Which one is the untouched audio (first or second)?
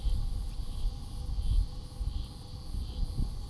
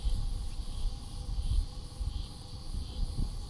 first